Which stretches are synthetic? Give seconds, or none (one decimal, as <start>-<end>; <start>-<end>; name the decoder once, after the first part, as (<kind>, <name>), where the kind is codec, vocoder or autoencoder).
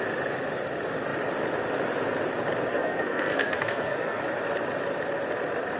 2.7-4.2 (codec, SNAC)